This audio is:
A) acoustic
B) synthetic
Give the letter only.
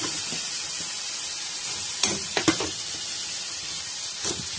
A